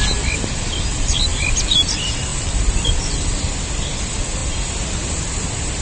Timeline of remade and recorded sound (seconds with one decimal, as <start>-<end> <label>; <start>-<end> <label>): 0.0-5.8 recorded